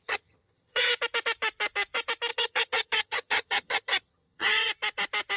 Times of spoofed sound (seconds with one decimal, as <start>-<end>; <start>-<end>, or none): 0.0-0.9; 2.3-4.7